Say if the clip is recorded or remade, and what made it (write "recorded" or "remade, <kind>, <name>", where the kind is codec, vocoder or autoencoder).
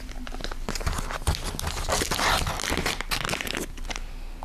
recorded